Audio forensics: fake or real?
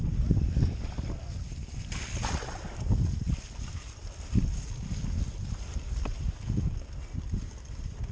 real